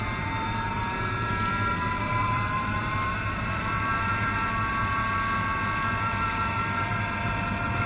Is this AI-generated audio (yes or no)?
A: yes